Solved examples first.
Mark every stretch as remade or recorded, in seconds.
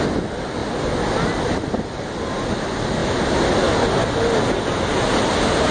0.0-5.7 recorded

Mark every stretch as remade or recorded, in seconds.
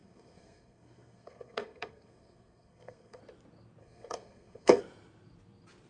0.0-3.2 remade; 3.2-3.8 recorded; 3.8-4.8 remade; 4.8-5.9 recorded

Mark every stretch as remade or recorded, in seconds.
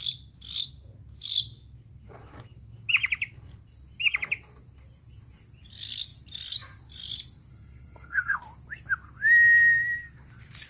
0.0-7.5 recorded; 7.5-8.4 remade; 8.4-10.7 recorded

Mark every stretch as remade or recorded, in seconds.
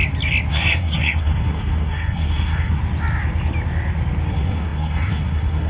0.0-0.5 recorded; 0.5-2.8 remade; 2.8-4.3 recorded; 4.3-5.7 remade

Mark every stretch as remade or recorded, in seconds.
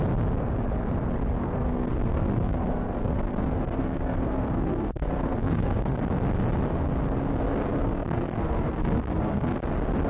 0.0-1.4 recorded; 1.4-6.0 remade; 6.0-7.8 recorded; 7.8-9.6 remade; 9.6-10.1 recorded